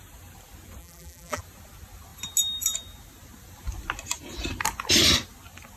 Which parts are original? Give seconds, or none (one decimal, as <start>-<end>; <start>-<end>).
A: 0.0-0.8; 1.4-5.8